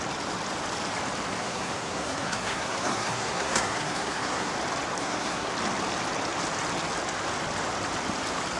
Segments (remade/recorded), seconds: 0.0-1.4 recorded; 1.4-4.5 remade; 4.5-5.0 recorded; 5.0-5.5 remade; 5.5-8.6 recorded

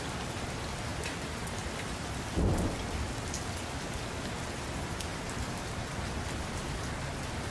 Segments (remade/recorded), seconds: 0.0-7.5 recorded

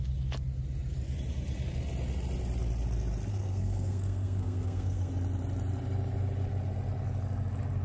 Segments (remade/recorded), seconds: 0.0-3.3 recorded; 3.3-5.1 remade; 5.1-7.8 recorded

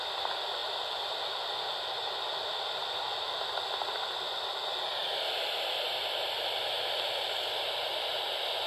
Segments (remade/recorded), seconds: 0.0-8.7 recorded